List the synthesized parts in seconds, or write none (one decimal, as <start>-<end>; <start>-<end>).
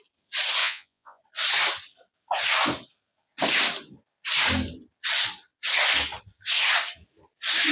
0.6-1.2